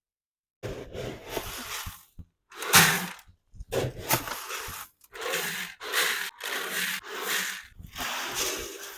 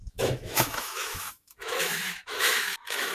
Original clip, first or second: first